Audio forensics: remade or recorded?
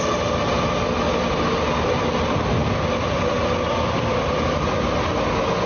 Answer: recorded